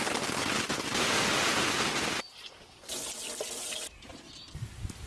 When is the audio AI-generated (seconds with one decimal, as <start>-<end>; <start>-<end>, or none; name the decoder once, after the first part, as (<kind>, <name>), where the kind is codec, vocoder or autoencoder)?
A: none